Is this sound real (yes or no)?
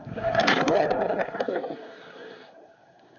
no